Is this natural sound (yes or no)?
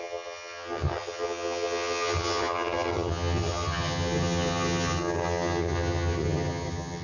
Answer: no